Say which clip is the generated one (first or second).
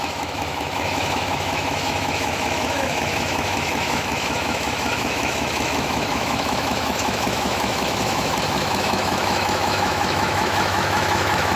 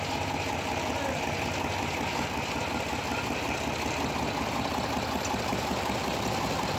first